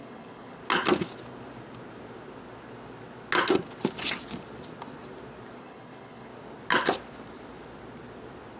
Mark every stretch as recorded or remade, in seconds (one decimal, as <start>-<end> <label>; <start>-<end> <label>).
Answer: 0.0-0.6 remade; 0.6-5.6 recorded; 5.6-6.3 remade; 6.3-8.6 recorded